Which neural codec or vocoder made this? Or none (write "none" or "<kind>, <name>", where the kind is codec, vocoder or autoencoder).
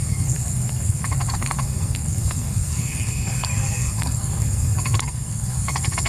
codec, SNAC